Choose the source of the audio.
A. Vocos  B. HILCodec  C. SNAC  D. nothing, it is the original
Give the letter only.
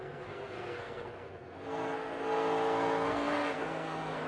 C